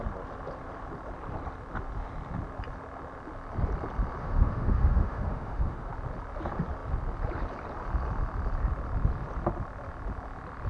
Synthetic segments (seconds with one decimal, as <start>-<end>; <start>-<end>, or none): 4.2-5.9